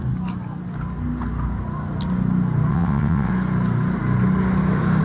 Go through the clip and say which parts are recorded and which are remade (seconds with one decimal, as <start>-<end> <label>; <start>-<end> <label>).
0.0-2.7 recorded; 2.7-3.3 remade; 3.3-5.0 recorded